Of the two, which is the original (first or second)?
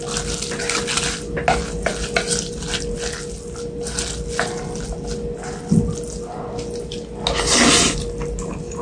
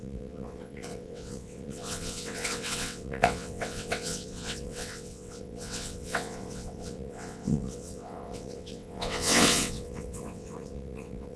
first